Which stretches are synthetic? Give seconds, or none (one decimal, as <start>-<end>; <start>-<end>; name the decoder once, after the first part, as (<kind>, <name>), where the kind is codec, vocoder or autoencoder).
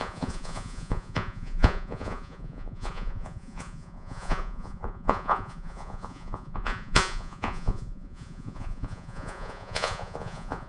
0.0-10.7 (vocoder, Vocos)